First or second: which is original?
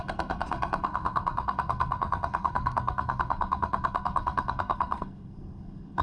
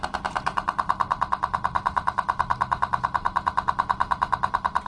second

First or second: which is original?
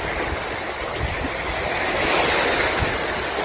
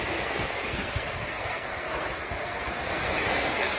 first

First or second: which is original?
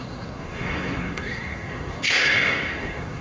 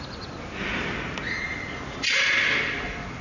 second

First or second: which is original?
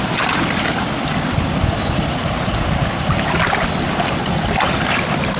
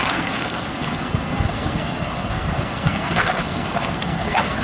first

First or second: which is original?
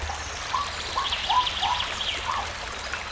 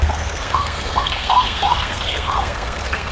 first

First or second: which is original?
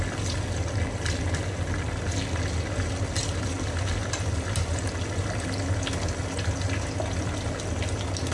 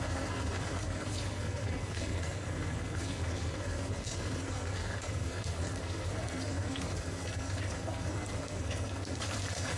first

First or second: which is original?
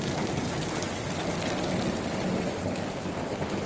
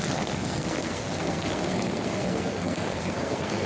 first